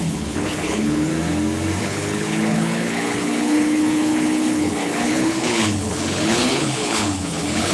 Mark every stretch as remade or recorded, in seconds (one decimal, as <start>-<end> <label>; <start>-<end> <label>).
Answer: 0.0-1.1 remade; 1.1-1.8 recorded; 1.8-7.7 remade